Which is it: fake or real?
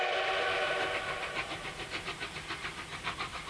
fake